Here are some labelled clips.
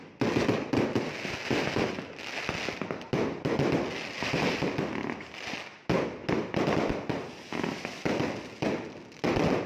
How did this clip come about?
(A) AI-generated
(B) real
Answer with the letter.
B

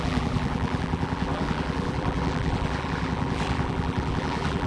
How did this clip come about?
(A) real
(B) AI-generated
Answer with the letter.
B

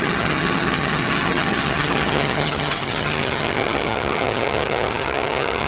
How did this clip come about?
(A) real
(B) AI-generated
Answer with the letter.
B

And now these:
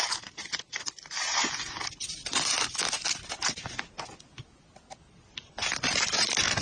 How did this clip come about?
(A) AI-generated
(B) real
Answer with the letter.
B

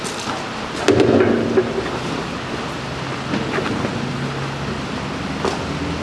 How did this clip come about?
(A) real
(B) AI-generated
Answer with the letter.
A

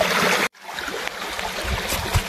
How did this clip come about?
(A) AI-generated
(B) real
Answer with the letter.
B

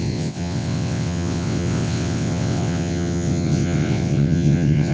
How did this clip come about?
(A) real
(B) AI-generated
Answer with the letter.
B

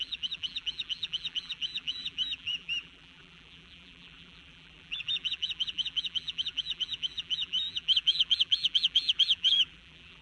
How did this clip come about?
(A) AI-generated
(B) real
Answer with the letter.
A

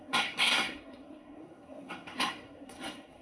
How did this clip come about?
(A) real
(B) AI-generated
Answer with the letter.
B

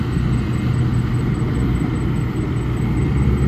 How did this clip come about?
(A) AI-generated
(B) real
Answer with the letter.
B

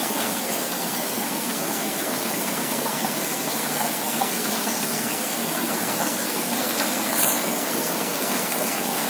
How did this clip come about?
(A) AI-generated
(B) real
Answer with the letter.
A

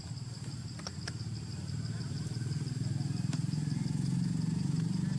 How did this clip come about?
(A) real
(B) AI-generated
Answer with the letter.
A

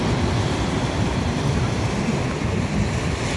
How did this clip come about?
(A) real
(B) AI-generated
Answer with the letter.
A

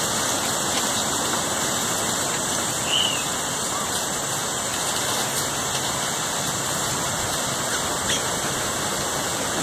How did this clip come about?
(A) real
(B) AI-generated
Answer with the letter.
A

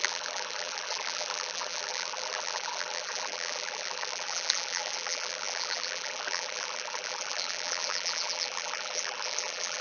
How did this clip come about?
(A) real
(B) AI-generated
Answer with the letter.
B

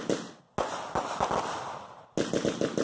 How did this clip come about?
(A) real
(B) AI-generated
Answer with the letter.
A